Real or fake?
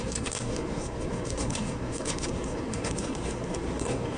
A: fake